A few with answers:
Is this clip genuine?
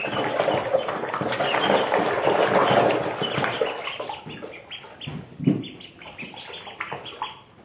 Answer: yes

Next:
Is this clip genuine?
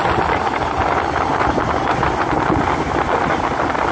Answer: yes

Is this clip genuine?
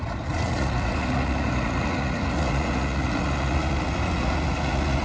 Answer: no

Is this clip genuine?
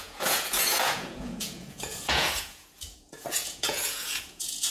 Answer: no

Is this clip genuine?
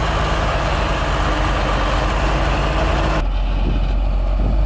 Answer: yes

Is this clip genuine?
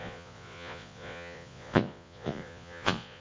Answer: no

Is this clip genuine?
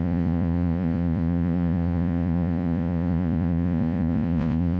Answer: no